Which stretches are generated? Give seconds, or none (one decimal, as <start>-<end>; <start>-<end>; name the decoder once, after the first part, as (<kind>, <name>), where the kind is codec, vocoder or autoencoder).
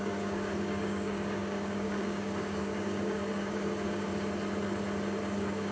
0.0-4.1 (codec, DAC); 5.2-5.7